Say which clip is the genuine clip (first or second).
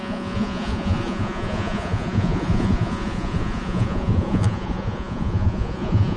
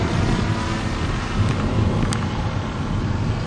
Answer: second